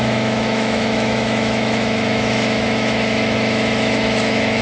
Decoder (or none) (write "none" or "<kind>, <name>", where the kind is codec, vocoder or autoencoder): autoencoder, DAC-VAE